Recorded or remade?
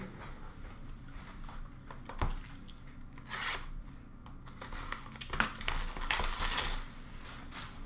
recorded